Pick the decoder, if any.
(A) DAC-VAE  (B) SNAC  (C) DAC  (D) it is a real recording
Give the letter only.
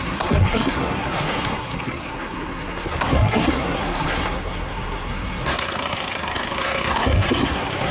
B